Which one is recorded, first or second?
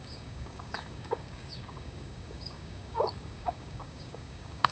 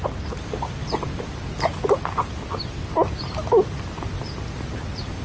second